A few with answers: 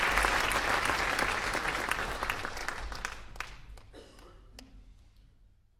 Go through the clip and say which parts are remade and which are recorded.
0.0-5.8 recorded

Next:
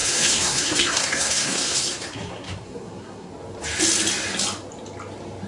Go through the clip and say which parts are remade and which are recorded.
0.0-3.3 remade; 3.3-5.5 recorded

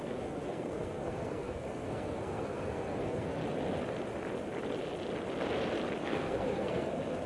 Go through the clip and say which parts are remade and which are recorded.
0.0-3.4 remade; 3.4-6.0 recorded; 6.0-7.3 remade

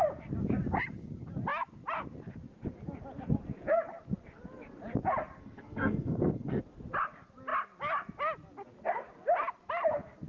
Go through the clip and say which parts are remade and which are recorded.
0.0-5.4 recorded; 5.4-6.6 remade; 6.6-10.3 recorded

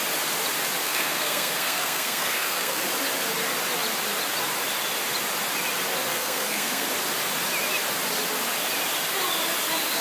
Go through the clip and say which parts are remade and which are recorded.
0.0-0.8 recorded; 0.8-2.8 remade; 2.8-6.1 recorded; 6.1-6.9 remade; 6.9-10.0 recorded

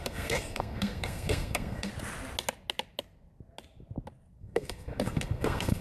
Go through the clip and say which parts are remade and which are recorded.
0.0-1.9 remade; 1.9-4.4 recorded; 4.4-5.8 remade

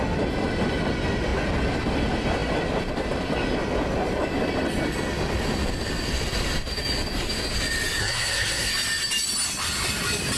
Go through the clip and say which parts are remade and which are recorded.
0.0-8.0 recorded; 8.0-8.7 remade; 8.7-10.4 recorded